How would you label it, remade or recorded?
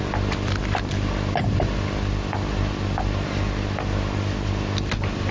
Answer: recorded